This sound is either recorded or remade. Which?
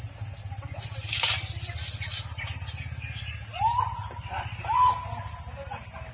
recorded